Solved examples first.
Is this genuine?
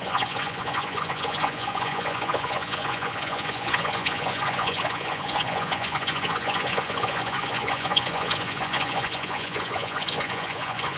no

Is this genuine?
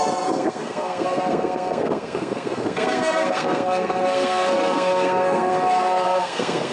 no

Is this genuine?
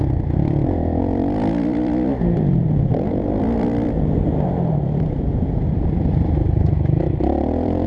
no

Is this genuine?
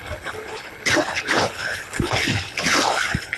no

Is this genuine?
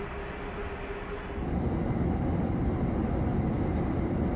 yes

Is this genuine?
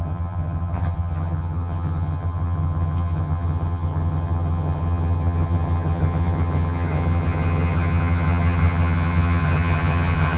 no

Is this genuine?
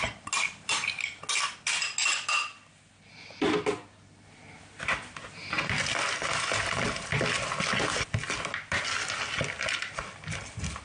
yes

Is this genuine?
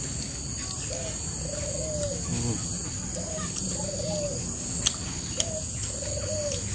yes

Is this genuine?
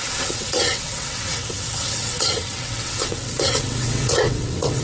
no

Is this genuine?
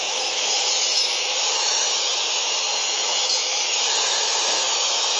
no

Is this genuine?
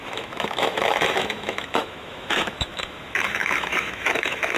no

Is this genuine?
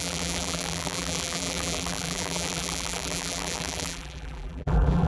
no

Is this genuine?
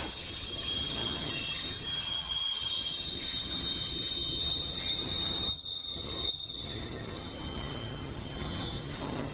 no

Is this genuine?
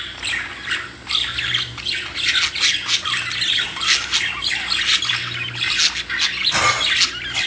yes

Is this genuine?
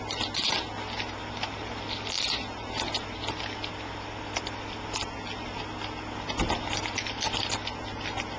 yes